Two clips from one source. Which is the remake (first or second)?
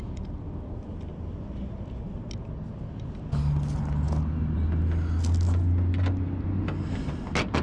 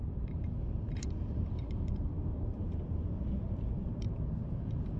second